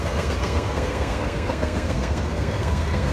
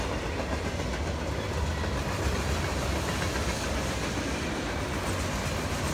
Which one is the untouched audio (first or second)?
second